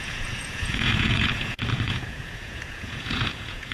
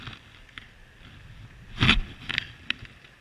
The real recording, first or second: second